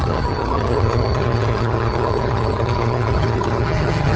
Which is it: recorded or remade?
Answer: remade